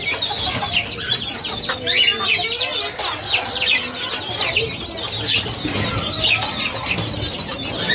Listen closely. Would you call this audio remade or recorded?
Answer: recorded